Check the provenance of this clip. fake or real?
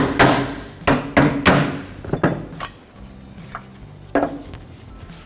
real